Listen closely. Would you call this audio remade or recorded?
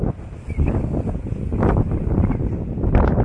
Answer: recorded